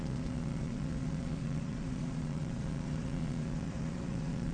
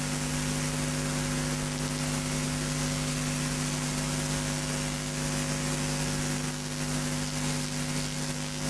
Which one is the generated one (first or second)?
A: first